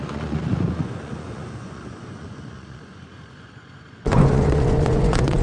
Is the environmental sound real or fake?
fake